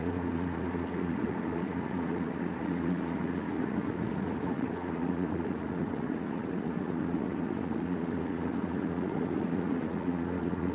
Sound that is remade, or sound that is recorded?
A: remade